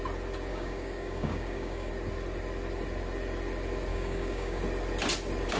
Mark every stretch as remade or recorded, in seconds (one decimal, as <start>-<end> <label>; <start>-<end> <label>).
0.0-0.5 recorded; 0.5-1.9 remade; 1.9-3.9 recorded; 3.9-4.6 remade; 4.6-5.6 recorded